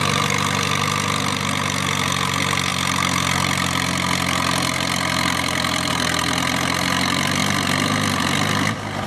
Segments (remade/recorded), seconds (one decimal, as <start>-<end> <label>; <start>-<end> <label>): 0.0-9.1 recorded